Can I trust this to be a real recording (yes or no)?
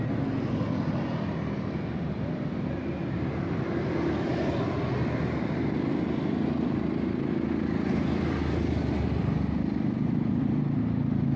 yes